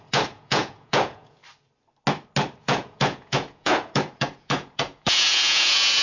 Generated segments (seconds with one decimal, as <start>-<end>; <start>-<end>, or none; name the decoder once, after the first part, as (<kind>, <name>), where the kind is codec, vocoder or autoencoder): 0.0-1.4 (vocoder, Vocos); 2.6-6.0